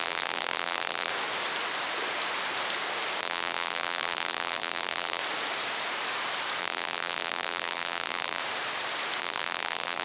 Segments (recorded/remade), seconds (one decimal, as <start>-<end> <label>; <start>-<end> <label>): 0.0-1.1 remade; 1.1-3.2 recorded; 3.2-5.2 remade; 5.2-6.6 recorded; 6.6-8.4 remade; 8.4-9.2 recorded; 9.2-10.0 remade